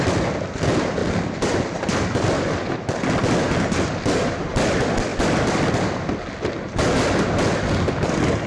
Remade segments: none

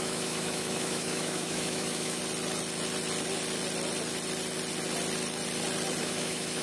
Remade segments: 0.0-2.2; 6.0-6.6

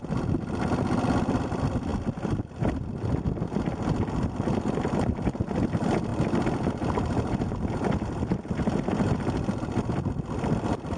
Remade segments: none